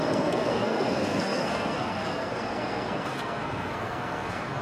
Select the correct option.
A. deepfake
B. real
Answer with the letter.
A